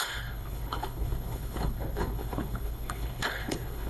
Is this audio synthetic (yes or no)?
yes